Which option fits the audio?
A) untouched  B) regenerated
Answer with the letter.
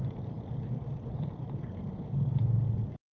B